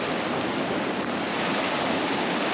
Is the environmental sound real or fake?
real